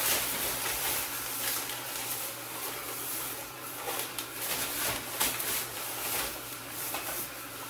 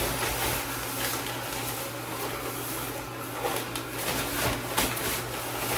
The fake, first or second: first